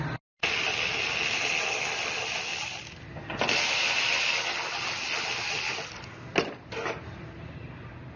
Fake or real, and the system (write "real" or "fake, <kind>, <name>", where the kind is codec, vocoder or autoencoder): real